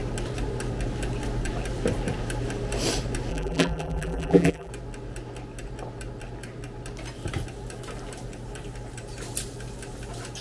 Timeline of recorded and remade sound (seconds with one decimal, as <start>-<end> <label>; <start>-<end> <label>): 0.0-3.3 recorded; 3.3-4.7 remade; 4.7-10.4 recorded